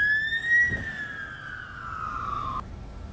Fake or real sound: real